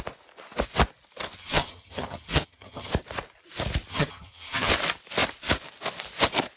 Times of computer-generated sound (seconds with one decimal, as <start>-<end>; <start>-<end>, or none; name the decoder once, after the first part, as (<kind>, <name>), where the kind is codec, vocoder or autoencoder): 1.4-2.9 (vocoder, HiFi-GAN); 3.9-4.7